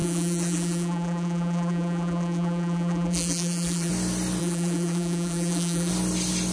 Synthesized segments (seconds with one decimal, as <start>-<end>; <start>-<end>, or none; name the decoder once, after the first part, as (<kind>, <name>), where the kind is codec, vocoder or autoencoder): 0.0-3.9 (vocoder, BigVGAN v2); 4.4-5.9